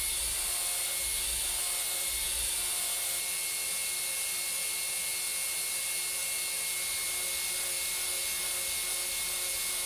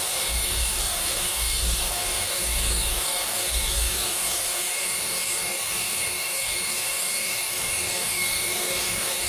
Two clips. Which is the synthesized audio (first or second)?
second